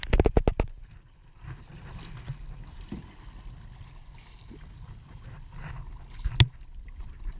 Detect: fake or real real